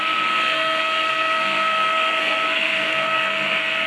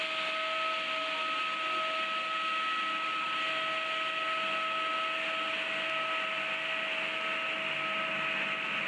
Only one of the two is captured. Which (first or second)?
second